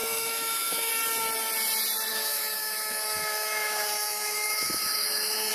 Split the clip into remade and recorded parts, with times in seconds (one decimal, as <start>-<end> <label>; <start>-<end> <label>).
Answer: 0.0-0.9 remade; 0.9-2.1 recorded; 2.1-5.5 remade

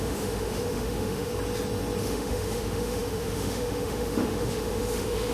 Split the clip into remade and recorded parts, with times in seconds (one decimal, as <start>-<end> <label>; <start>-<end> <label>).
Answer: 0.0-1.3 remade; 1.3-2.0 recorded; 2.0-5.3 remade

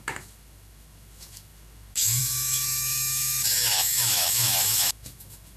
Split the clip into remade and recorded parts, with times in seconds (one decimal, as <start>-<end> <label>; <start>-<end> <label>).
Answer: 0.0-5.6 remade

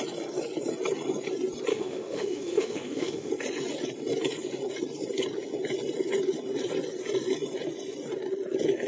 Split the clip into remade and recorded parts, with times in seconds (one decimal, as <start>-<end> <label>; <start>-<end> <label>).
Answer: 0.0-1.7 recorded; 1.7-3.3 remade; 3.3-8.9 recorded